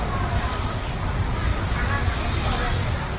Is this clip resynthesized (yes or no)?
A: no